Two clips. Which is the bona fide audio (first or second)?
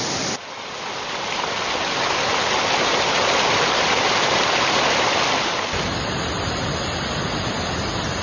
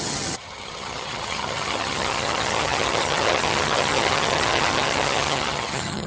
first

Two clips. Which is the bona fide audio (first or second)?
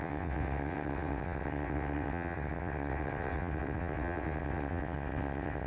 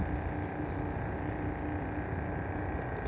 second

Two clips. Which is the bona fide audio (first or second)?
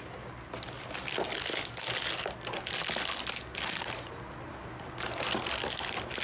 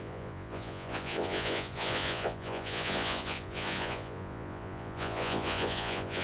first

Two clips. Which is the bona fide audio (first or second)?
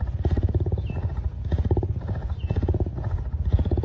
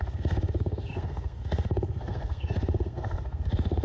first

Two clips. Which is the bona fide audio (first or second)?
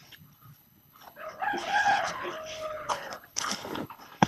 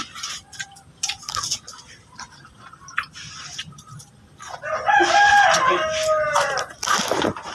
second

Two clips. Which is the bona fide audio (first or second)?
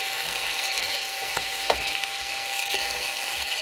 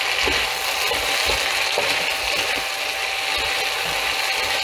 second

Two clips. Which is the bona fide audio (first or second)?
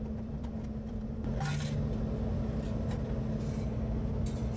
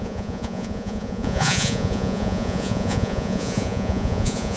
first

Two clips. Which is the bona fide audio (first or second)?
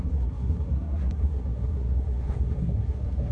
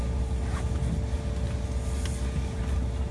second